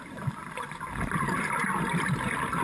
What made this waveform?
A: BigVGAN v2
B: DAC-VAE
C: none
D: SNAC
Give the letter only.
C